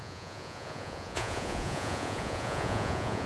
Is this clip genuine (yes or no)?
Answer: no